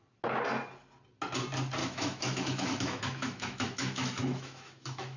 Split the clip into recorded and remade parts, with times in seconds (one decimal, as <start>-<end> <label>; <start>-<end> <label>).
0.0-1.8 recorded; 1.8-5.2 remade